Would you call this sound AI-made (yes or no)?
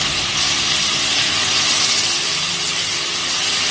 no